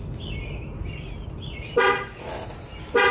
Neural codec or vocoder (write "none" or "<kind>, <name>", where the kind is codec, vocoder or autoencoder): none